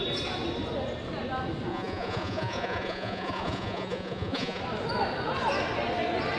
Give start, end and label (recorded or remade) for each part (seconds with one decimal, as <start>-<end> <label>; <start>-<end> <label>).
0.0-1.7 recorded; 1.7-4.6 remade; 4.6-6.4 recorded